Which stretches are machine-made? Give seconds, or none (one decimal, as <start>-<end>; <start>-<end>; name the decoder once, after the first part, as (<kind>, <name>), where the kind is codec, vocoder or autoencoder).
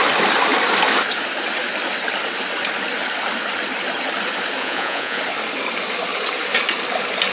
4.6-5.2 (vocoder, Vocos)